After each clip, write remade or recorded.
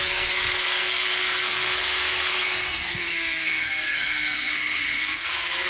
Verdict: remade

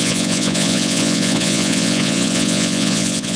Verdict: remade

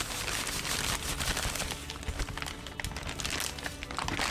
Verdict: recorded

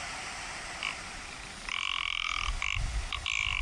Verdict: recorded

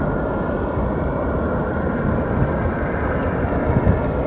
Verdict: recorded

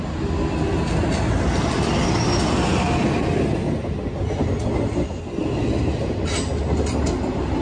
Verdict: recorded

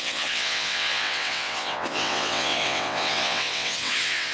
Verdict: remade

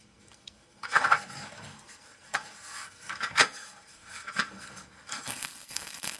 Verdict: remade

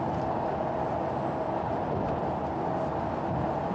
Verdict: recorded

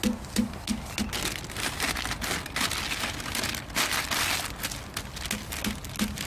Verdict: recorded